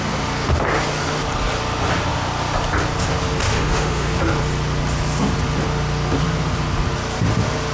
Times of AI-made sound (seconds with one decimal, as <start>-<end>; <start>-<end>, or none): 3.4-4.1